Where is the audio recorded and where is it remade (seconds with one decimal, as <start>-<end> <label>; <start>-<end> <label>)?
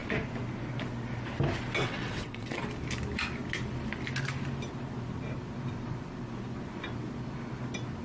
0.0-1.8 recorded; 1.8-2.6 remade; 2.6-8.0 recorded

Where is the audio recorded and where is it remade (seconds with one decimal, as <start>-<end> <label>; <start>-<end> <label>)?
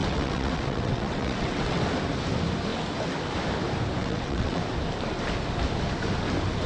0.0-1.8 remade; 1.8-4.0 recorded; 4.0-4.6 remade; 4.6-6.7 recorded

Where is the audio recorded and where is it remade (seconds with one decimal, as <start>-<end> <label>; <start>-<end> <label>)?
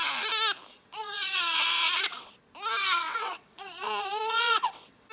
0.0-0.7 recorded; 0.7-2.4 remade; 2.4-2.8 recorded; 2.8-5.1 remade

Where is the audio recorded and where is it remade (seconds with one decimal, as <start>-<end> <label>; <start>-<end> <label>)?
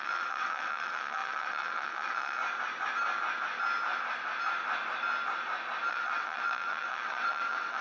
0.0-2.4 remade; 2.4-5.9 recorded; 5.9-7.8 remade